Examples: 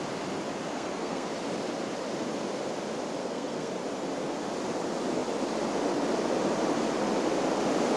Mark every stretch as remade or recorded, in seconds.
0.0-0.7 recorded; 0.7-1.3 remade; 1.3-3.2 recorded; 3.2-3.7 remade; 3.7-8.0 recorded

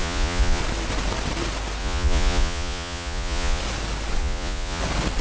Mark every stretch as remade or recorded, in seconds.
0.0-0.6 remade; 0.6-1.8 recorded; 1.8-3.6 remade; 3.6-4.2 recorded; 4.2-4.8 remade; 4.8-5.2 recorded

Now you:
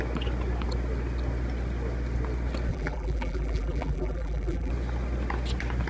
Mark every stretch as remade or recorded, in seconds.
0.0-2.7 recorded; 2.7-4.7 remade; 4.7-5.9 recorded

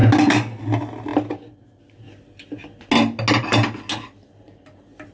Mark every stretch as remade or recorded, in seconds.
0.0-5.1 recorded